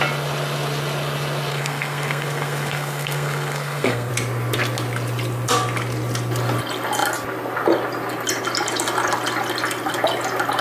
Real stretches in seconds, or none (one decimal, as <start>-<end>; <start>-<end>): 0.0-1.5; 4.1-10.6